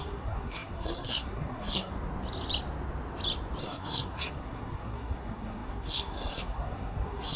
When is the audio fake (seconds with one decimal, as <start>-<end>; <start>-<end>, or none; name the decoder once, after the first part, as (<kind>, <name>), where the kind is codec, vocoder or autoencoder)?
0.0-1.9 (codec, SNAC); 3.6-7.4